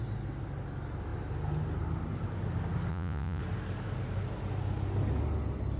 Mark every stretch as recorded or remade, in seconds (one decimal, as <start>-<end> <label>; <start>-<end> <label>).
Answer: 0.0-2.9 recorded; 2.9-3.4 remade; 3.4-5.8 recorded